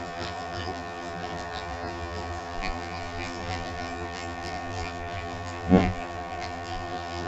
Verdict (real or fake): fake